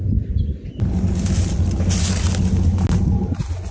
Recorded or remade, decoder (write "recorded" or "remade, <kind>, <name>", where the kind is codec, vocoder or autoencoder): recorded